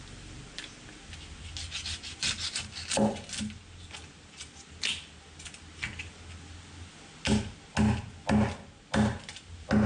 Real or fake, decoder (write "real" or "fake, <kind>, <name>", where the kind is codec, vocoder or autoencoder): real